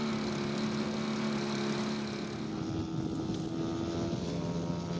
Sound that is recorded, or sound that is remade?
recorded